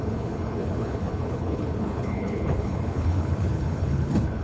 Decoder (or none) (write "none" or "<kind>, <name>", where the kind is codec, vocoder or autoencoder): codec, HILCodec